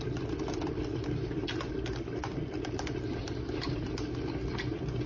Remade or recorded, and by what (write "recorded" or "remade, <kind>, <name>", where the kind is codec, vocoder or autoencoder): recorded